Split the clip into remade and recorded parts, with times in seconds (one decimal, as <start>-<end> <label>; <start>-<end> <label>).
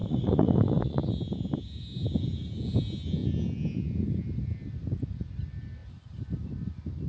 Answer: 0.0-1.0 remade; 1.0-7.1 recorded